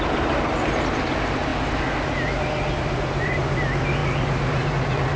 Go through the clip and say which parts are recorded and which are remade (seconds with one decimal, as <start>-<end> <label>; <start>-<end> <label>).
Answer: 0.0-5.2 recorded